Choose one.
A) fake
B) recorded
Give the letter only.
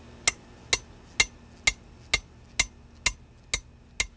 B